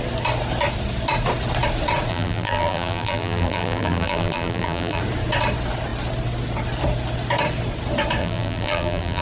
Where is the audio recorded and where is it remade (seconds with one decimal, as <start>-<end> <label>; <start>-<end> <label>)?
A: 0.0-2.1 recorded; 2.1-5.0 remade; 5.0-8.2 recorded; 8.2-9.2 remade